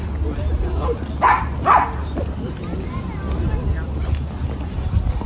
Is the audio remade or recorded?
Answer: recorded